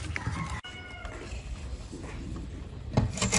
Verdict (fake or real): real